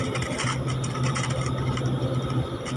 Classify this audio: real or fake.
real